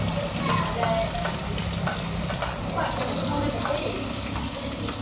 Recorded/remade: recorded